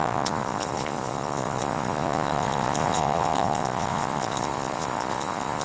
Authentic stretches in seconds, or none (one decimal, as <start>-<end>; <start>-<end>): none